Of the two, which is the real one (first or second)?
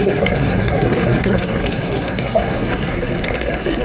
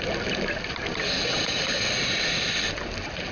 second